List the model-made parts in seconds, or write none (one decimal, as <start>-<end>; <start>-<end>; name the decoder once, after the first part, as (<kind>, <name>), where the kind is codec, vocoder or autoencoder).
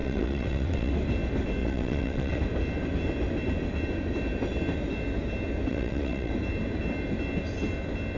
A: 0.0-0.9 (vocoder, WaveNeXt); 1.6-2.4; 5.7-6.3